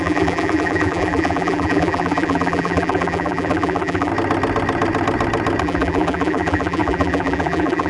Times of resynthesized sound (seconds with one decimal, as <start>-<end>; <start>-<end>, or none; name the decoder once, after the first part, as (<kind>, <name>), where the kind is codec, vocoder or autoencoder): 0.0-4.1 (vocoder, BigVGAN v2); 5.6-7.9